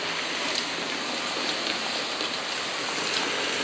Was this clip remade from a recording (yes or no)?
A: no